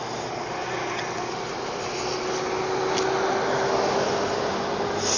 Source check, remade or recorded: recorded